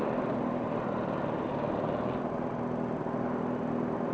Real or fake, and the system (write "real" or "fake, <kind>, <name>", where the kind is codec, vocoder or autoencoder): real